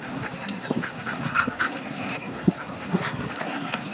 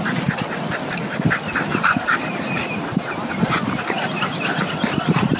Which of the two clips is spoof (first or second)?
first